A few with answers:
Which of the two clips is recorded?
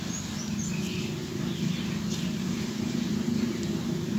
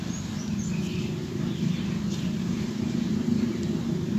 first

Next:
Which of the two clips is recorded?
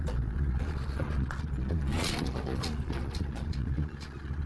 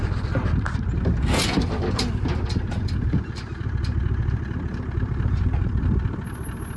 second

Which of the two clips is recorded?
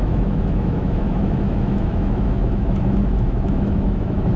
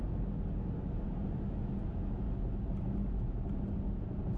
second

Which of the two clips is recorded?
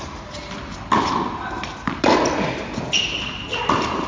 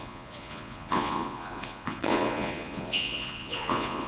first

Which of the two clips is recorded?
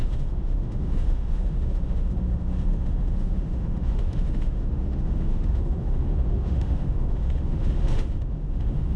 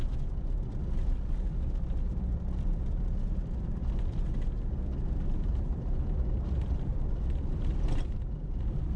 second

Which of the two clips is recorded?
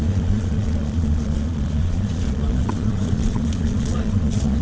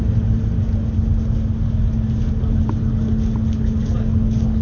second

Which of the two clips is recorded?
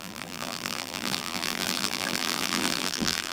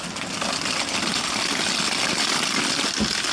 second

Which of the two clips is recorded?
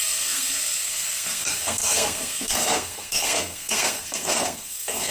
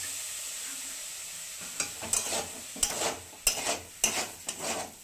second